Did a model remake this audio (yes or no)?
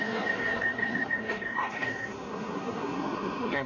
yes